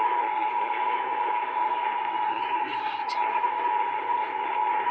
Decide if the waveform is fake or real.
fake